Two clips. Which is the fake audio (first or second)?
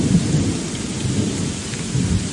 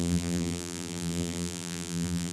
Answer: second